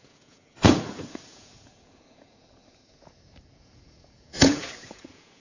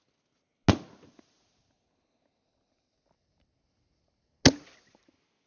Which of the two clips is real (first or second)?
second